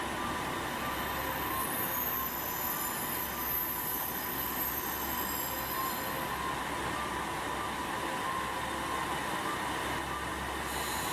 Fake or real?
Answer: real